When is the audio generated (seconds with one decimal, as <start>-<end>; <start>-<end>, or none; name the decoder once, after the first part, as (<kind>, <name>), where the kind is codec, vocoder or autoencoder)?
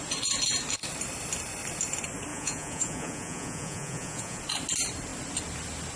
2.3-4.4 (vocoder, Vocos)